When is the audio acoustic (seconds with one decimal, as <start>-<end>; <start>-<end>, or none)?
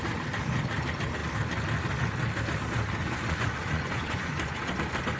0.0-3.0; 4.7-5.2